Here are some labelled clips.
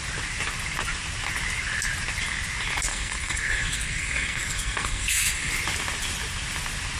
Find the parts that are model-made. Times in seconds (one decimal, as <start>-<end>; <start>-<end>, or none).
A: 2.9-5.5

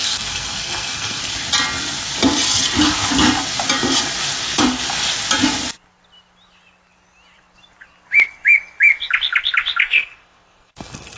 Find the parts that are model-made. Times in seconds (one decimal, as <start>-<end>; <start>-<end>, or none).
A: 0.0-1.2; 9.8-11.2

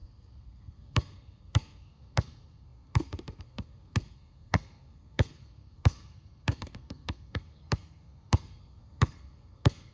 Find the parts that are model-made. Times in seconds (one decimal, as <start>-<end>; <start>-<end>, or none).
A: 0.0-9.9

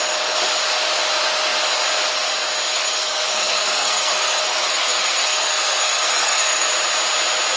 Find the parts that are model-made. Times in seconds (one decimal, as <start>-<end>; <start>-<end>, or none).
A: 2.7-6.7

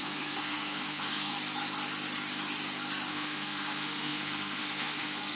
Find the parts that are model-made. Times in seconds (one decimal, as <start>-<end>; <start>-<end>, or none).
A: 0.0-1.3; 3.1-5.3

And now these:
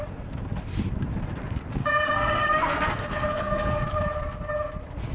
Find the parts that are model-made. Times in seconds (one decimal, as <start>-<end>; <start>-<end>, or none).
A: 1.8-3.8